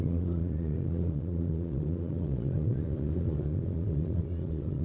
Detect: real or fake fake